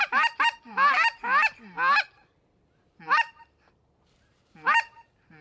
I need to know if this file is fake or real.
real